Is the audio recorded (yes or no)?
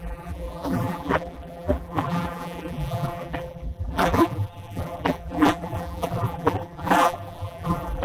no